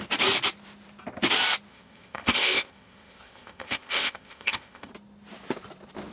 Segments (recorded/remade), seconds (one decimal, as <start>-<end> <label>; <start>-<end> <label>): 0.0-1.7 recorded; 1.7-4.9 remade; 4.9-6.1 recorded